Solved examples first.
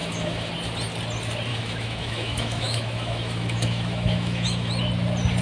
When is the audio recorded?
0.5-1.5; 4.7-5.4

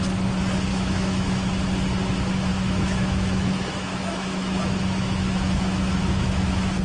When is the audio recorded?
0.0-0.7; 1.5-2.5

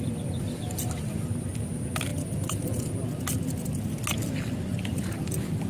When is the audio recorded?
0.0-5.7

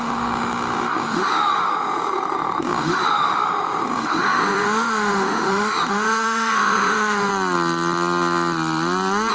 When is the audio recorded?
7.3-9.3

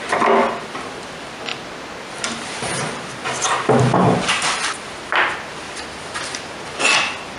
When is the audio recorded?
0.0-7.4